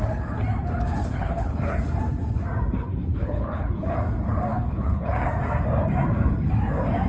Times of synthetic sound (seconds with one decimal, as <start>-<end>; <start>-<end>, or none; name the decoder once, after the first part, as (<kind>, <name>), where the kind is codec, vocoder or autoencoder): 1.0-1.8 (codec, HILCodec); 3.1-3.9; 4.5-5.3